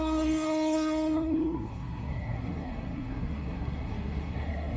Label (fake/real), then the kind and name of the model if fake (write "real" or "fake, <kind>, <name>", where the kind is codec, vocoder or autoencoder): fake, codec, SNAC